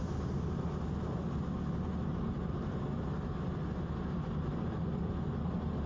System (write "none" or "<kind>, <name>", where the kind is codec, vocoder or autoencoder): none